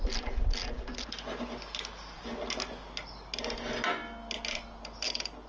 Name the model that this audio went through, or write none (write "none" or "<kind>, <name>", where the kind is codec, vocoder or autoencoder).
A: none